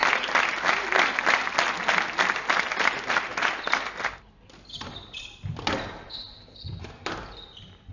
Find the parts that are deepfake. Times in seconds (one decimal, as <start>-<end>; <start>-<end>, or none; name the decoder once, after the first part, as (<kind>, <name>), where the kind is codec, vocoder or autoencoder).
none